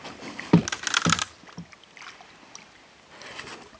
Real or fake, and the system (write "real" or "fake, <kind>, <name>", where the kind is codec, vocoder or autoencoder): real